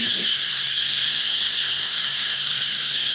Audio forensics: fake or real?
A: fake